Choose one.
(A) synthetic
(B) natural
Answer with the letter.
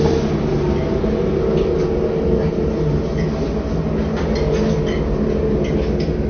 B